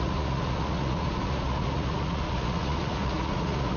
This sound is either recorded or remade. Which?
remade